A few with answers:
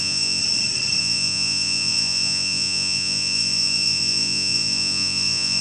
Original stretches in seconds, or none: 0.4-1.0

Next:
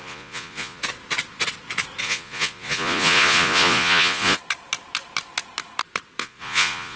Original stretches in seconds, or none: 0.8-2.0; 4.4-6.2

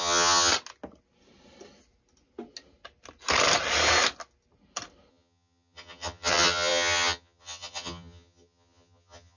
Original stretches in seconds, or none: 0.5-5.1

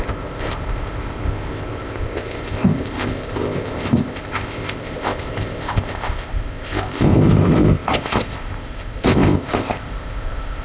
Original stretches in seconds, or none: none